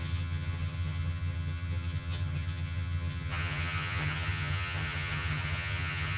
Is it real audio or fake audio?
fake